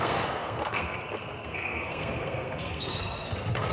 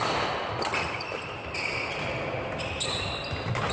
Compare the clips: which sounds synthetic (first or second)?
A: first